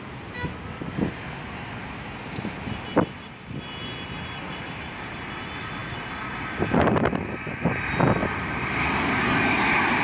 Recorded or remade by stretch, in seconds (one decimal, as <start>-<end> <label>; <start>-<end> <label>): 0.0-2.9 recorded; 2.9-5.1 remade; 5.1-5.8 recorded; 5.8-6.3 remade; 6.3-8.2 recorded; 8.2-9.4 remade; 9.4-10.0 recorded